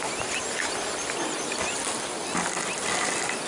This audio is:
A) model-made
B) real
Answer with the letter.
B